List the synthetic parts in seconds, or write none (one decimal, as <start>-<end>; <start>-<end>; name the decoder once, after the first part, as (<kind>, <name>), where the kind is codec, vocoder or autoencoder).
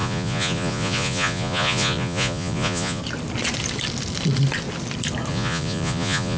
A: 0.0-3.0 (vocoder, Vocos); 5.3-6.4